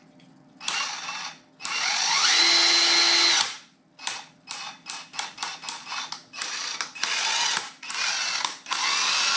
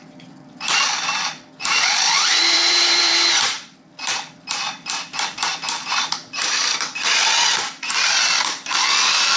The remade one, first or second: second